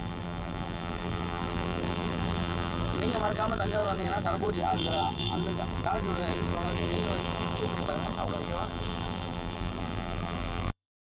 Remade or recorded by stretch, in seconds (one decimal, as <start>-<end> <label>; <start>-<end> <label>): 0.0-11.1 remade